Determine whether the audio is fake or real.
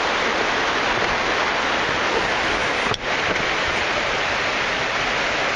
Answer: real